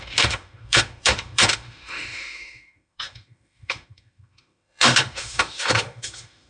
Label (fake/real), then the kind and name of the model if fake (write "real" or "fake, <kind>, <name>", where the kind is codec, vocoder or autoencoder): fake, autoencoder, DAC-VAE